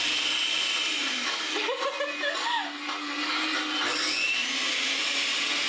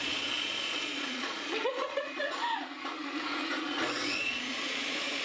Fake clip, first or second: second